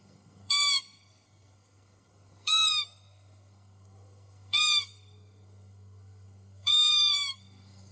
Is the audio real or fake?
fake